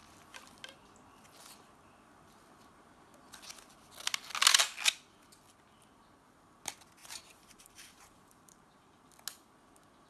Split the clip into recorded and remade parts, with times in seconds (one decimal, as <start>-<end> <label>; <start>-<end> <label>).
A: 0.0-7.0 recorded; 7.0-9.0 remade; 9.0-10.1 recorded